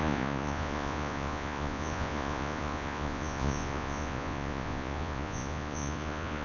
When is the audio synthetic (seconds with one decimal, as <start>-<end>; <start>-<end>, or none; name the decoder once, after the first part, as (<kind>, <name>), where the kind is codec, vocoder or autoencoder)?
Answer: 0.0-6.4 (vocoder, Vocos)